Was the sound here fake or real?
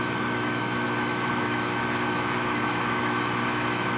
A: fake